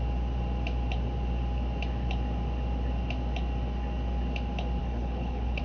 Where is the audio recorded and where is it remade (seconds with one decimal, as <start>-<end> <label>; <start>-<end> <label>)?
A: 0.0-4.8 recorded; 4.8-5.6 remade